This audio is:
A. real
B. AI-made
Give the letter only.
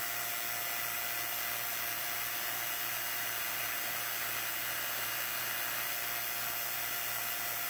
A